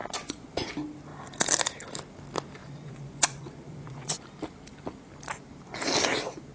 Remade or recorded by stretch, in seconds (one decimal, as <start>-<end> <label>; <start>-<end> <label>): 0.0-0.7 remade; 0.7-2.6 recorded; 2.6-4.2 remade; 4.2-6.5 recorded